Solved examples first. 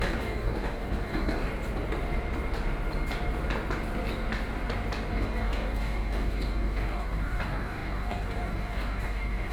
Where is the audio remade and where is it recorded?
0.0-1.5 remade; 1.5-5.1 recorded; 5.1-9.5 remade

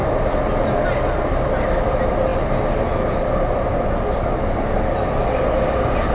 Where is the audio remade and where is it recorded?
0.0-6.1 recorded

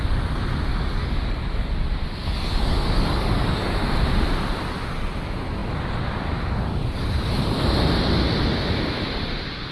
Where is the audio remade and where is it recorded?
0.0-0.7 recorded; 0.7-1.7 remade; 1.7-2.2 recorded; 2.2-3.9 remade; 3.9-9.7 recorded

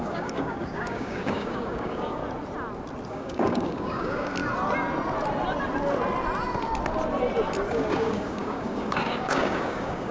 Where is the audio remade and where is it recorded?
0.0-2.2 remade; 2.2-3.1 recorded; 3.1-4.4 remade; 4.4-7.7 recorded; 7.7-10.1 remade

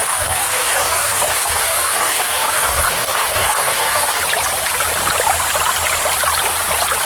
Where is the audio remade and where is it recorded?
0.0-4.2 remade; 4.2-7.0 recorded